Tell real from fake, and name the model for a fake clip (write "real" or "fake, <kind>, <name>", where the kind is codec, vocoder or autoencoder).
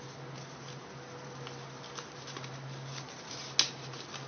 real